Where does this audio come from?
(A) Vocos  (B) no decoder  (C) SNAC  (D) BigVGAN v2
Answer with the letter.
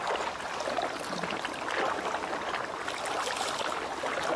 B